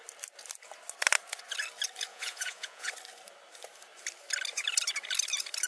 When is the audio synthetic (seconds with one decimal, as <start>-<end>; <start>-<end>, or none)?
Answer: 2.1-2.9